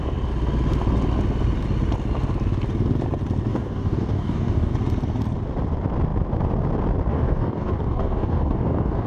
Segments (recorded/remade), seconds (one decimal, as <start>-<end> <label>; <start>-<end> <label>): 0.0-3.5 recorded; 3.5-4.7 remade; 4.7-7.1 recorded; 7.1-9.1 remade